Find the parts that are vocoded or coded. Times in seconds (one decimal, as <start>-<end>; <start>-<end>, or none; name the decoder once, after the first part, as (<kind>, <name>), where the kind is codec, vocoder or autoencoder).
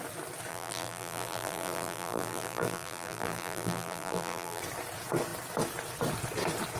0.5-4.6 (vocoder, BigVGAN v2)